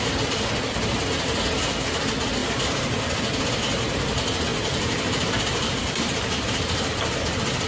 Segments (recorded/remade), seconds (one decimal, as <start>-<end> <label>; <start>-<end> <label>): 0.0-2.4 recorded; 2.4-3.0 remade; 3.0-4.5 recorded; 4.5-6.3 remade; 6.3-7.7 recorded